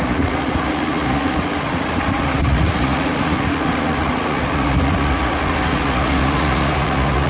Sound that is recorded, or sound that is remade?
remade